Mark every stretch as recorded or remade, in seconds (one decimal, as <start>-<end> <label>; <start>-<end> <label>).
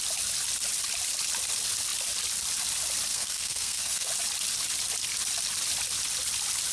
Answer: 0.0-3.1 recorded; 3.1-4.1 remade; 4.1-6.7 recorded